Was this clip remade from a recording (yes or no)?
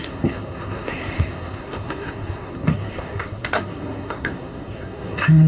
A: yes